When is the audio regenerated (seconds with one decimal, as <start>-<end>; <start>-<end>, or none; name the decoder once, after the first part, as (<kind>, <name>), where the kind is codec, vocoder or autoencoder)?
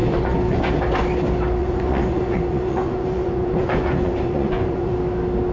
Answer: 0.0-0.7 (vocoder, Vocos); 1.6-4.9